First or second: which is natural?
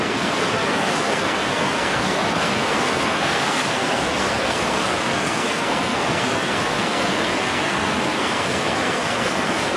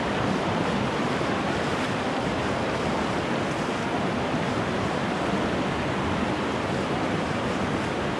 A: second